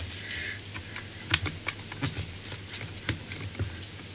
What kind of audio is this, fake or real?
real